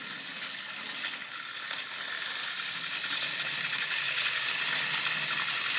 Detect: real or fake real